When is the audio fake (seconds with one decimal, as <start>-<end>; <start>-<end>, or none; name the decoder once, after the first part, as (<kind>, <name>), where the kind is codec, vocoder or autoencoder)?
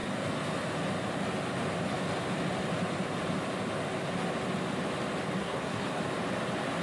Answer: 5.4-6.0 (codec, SNAC)